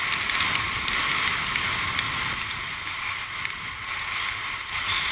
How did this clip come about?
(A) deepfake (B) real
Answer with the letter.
B